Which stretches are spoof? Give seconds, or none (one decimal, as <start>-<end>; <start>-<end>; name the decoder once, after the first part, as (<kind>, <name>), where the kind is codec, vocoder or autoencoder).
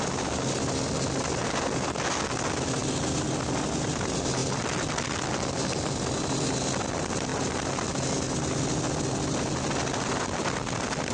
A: none